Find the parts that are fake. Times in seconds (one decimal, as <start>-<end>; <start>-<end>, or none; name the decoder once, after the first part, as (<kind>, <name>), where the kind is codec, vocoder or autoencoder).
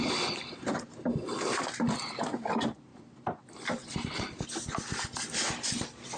none